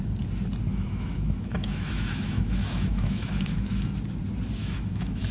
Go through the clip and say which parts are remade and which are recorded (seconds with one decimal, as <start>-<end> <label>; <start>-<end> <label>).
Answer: 0.0-0.7 recorded; 0.7-3.9 remade; 3.9-4.6 recorded; 4.6-5.3 remade